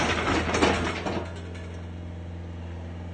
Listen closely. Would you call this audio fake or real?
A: real